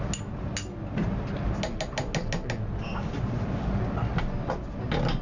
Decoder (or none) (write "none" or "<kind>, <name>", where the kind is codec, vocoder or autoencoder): none